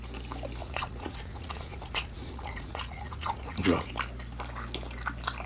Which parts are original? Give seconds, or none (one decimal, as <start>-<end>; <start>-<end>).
0.0-0.6; 3.9-5.5